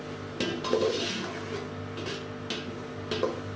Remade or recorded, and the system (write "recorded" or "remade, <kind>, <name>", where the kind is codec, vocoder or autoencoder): recorded